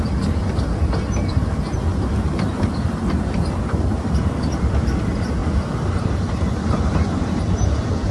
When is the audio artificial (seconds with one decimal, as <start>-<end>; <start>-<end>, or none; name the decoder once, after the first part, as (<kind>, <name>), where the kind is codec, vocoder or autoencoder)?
0.0-8.1 (vocoder, BigVGAN v2)